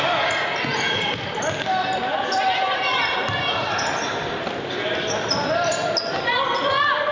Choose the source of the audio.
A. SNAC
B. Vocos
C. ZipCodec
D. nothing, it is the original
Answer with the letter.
D